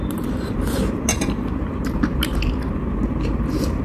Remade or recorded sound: remade